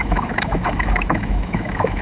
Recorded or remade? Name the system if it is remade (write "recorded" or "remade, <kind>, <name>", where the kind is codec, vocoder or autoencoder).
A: remade, autoencoder, DAC-VAE